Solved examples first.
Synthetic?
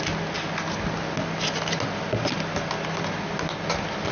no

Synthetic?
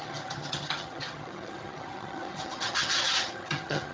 yes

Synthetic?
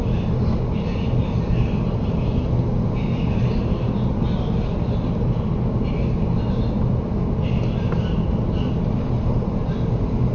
no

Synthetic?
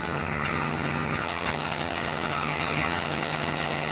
yes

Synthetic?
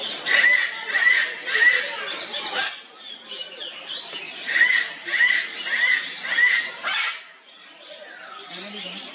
no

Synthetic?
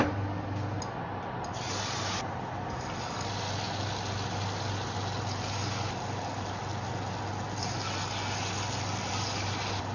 no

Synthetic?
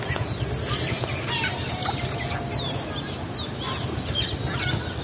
no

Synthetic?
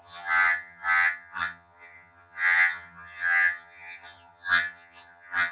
yes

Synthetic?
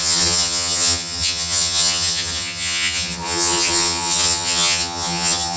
yes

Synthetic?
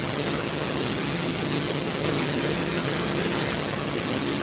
yes